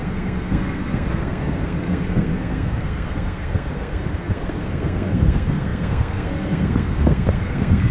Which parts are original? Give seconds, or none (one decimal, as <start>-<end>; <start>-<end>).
none